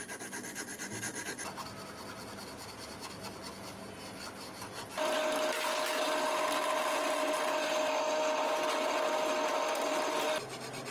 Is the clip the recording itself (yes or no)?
yes